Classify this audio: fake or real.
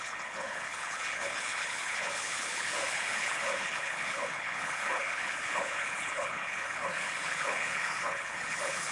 fake